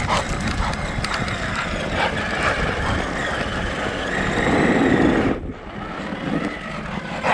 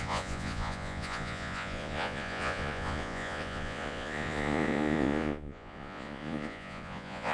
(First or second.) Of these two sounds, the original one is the first